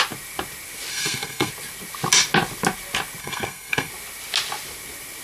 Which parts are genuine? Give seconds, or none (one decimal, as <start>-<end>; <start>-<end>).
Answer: 0.0-0.9; 1.5-3.2; 3.9-5.2